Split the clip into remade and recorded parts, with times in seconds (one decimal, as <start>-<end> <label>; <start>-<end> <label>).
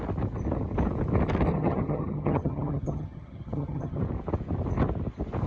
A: 0.0-1.5 recorded; 1.5-4.0 remade; 4.0-5.5 recorded